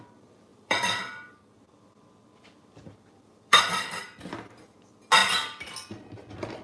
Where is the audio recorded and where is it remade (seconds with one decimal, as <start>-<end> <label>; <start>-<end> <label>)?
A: 0.0-0.5 recorded; 0.5-4.5 remade; 4.5-5.2 recorded; 5.2-6.6 remade